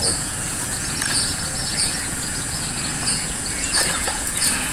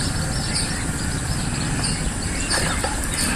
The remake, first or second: first